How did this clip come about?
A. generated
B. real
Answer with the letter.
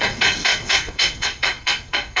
A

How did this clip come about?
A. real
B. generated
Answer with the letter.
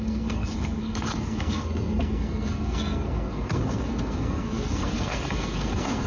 B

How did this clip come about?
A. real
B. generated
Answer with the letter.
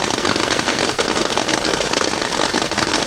B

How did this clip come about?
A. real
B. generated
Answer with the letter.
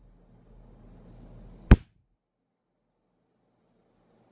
A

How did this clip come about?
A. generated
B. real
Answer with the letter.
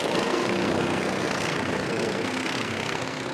A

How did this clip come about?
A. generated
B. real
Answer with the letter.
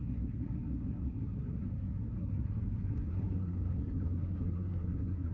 A